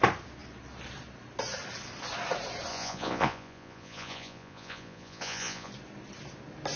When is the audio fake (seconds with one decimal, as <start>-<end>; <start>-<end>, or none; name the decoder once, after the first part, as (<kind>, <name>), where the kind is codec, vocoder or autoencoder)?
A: 2.7-5.7 (vocoder, Vocos)